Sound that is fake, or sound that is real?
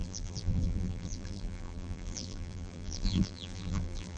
fake